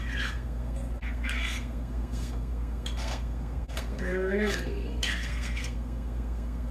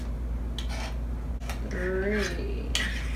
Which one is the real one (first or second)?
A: second